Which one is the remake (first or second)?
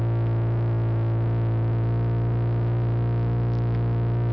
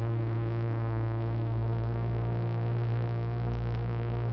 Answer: second